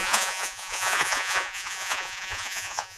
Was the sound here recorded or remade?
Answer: remade